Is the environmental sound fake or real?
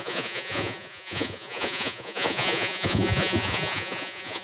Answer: fake